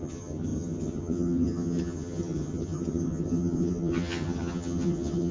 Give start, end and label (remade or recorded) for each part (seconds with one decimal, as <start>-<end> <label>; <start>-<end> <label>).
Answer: 0.0-5.3 remade